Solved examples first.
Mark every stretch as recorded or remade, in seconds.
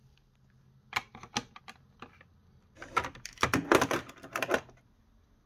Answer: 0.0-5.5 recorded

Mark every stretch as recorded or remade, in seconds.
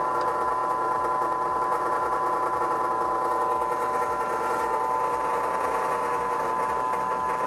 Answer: 0.0-7.5 recorded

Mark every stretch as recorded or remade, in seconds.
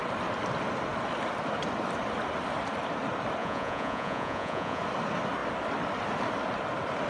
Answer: 0.0-3.4 recorded; 3.4-4.8 remade; 4.8-7.1 recorded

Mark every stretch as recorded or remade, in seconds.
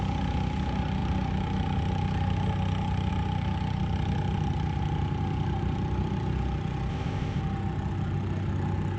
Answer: 0.0-6.9 recorded; 6.9-7.4 remade; 7.4-9.0 recorded